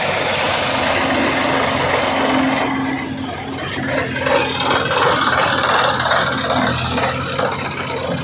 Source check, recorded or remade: recorded